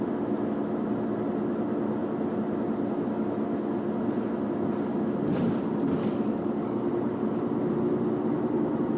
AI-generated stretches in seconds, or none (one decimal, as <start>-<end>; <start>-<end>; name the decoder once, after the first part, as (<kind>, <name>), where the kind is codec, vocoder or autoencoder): 6.0-6.8 (codec, DAC)